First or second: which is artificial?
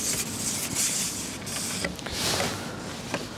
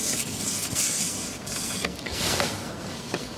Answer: second